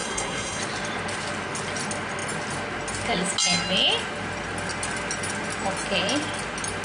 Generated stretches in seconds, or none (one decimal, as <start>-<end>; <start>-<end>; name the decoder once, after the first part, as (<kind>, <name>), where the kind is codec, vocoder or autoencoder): 0.0-0.6 (codec, SNAC)